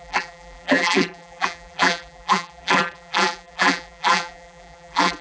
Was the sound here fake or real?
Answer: fake